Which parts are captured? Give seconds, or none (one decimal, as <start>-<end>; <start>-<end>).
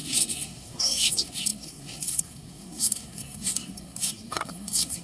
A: none